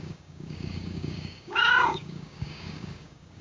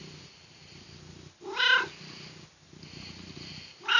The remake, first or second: first